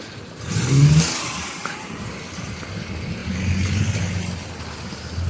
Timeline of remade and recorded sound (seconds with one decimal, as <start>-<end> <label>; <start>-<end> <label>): 0.0-1.6 recorded; 1.6-2.1 remade; 2.1-5.3 recorded